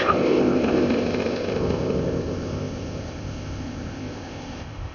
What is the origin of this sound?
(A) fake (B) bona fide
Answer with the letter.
A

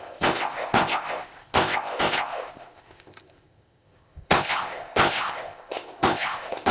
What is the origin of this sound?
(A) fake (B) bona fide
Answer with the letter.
A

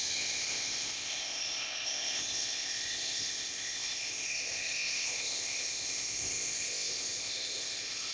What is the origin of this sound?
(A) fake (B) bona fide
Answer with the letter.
A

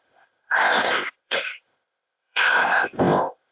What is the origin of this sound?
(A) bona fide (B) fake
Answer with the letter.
B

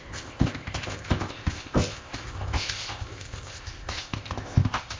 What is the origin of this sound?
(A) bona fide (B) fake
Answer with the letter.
B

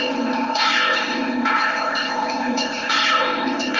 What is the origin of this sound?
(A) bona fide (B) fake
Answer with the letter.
B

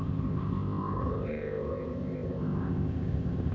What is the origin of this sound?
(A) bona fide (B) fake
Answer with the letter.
B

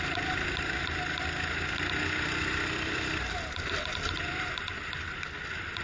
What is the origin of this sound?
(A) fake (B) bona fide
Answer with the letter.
B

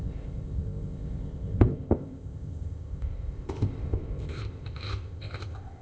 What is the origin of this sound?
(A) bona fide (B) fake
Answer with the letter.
B